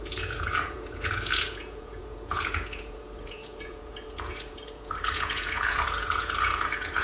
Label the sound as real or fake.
fake